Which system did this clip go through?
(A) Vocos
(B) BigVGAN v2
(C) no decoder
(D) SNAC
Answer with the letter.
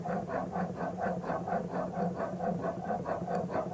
C